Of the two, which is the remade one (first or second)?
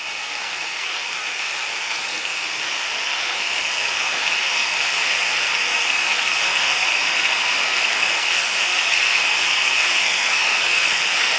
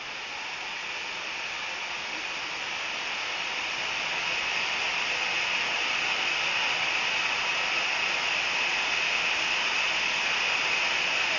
first